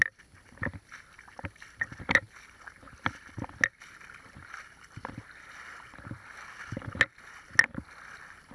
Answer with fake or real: real